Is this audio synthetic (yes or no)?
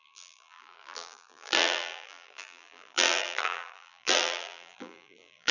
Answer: yes